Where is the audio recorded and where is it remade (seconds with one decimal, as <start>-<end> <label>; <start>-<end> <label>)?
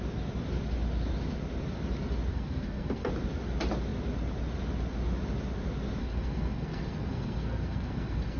0.0-2.3 recorded; 2.3-3.1 remade; 3.1-6.0 recorded; 6.0-8.4 remade